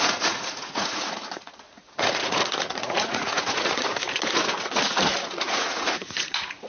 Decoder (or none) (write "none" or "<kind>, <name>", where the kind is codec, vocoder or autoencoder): vocoder, Vocos